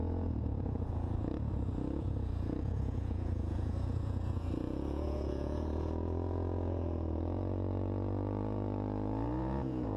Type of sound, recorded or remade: remade